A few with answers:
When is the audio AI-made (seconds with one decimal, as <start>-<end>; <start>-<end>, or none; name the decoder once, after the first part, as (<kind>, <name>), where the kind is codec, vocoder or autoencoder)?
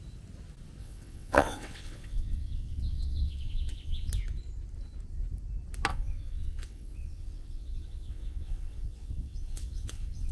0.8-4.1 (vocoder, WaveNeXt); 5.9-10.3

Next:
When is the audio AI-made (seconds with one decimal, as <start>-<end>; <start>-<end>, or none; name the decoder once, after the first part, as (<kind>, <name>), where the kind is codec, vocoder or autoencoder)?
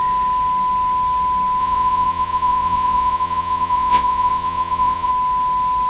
1.6-5.1 (vocoder, WaveNeXt)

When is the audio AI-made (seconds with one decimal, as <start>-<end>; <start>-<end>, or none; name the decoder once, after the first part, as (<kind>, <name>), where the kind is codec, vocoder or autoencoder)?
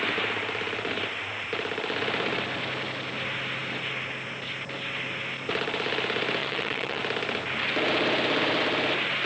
6.4-7.0 (vocoder, WaveNeXt)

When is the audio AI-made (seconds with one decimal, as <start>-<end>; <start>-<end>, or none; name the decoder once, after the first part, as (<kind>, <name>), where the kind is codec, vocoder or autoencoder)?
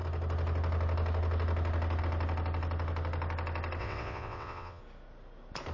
3.8-4.8 (vocoder, WaveNeXt)